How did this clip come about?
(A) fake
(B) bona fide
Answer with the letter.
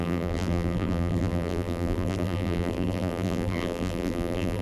A